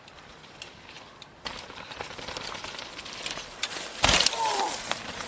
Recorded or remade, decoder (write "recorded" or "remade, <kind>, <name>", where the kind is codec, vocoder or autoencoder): remade, vocoder, BigVGAN v2